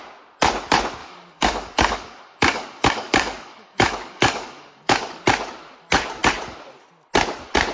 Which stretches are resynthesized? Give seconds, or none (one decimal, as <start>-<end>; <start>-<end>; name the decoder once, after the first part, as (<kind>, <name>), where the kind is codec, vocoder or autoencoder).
1.0-5.2 (codec, DAC)